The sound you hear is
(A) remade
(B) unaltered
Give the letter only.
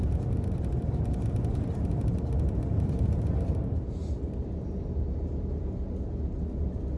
B